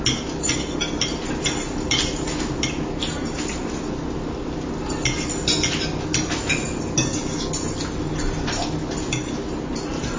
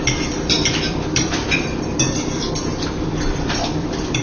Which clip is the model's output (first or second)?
second